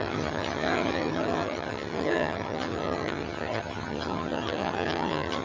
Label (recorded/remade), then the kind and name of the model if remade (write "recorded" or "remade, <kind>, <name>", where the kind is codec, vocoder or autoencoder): remade, vocoder, HiFi-GAN